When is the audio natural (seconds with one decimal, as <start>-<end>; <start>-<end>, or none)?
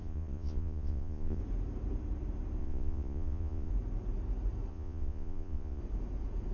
1.4-2.6; 3.7-4.7; 5.8-6.5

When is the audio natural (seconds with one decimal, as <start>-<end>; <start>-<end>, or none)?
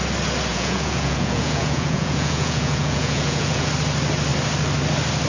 0.0-0.5; 3.7-5.3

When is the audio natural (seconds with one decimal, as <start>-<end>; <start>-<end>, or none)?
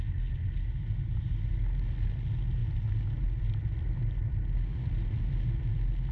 0.0-6.1